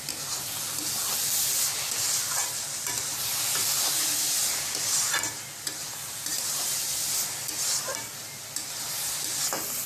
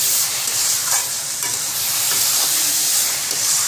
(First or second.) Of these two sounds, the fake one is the second